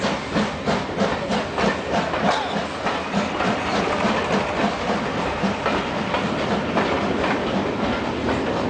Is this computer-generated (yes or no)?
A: no